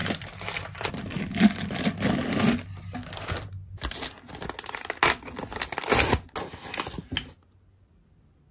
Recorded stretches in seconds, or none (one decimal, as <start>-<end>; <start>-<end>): 0.9-8.5